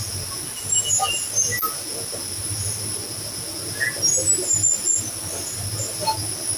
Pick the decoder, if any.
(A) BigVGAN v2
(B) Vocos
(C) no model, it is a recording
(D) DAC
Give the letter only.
C